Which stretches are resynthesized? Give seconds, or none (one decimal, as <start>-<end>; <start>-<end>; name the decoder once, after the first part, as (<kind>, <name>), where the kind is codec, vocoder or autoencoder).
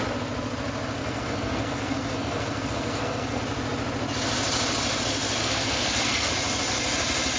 1.0-3.4 (codec, SNAC); 5.4-6.3